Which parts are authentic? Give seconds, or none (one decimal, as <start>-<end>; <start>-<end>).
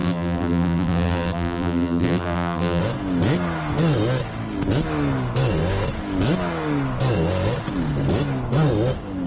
2.8-9.3